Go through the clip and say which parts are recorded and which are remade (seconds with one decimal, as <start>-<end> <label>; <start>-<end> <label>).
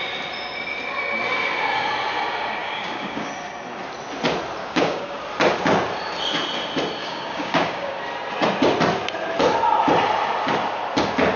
0.0-2.6 recorded; 2.6-3.3 remade; 3.3-4.6 recorded; 4.6-5.2 remade; 5.2-7.0 recorded; 7.0-8.0 remade; 8.0-11.4 recorded